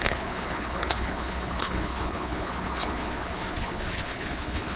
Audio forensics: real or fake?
fake